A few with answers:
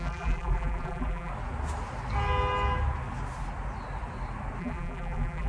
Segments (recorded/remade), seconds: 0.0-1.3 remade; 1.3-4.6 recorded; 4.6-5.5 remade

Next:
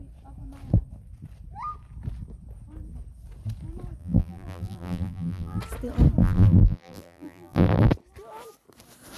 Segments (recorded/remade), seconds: 0.0-4.0 recorded; 4.0-5.6 remade; 5.6-6.2 recorded; 6.2-7.9 remade; 7.9-9.2 recorded

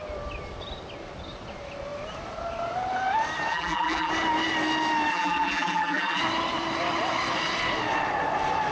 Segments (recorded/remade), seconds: 0.0-3.5 recorded; 3.5-4.1 remade; 4.1-5.1 recorded; 5.1-6.2 remade; 6.2-8.7 recorded